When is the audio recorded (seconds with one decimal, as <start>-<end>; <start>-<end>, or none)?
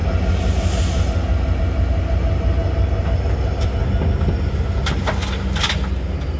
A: 0.0-6.4